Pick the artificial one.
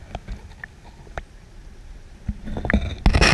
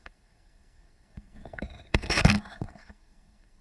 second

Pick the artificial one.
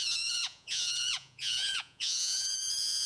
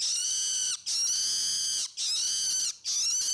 first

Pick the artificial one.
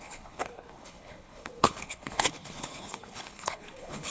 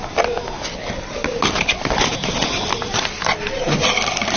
first